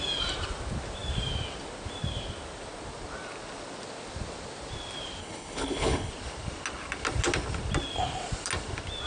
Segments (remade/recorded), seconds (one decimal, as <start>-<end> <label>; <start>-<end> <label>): 0.0-5.2 recorded; 5.2-6.1 remade; 6.1-9.1 recorded